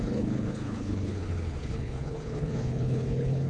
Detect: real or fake fake